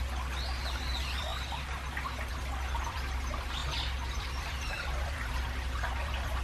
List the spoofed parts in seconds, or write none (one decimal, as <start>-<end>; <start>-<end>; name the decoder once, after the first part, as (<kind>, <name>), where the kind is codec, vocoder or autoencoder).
0.0-1.3 (vocoder, BigVGAN v2); 2.3-3.6; 4.2-6.4